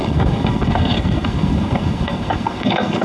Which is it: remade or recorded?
remade